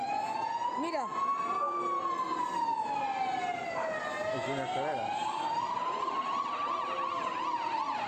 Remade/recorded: recorded